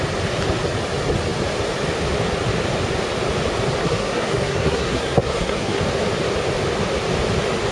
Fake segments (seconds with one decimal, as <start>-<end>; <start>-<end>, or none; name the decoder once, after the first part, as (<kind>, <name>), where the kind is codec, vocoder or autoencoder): 3.8-5.8 (codec, SNAC)